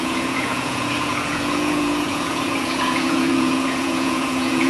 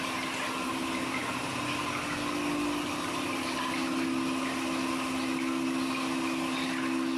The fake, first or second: first